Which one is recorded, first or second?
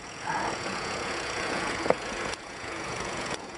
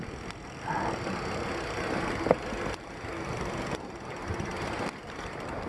second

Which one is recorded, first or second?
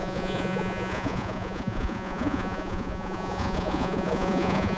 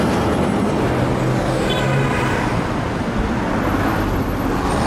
second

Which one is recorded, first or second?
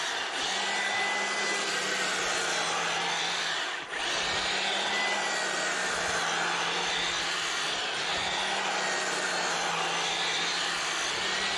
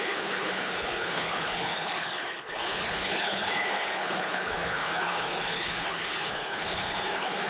first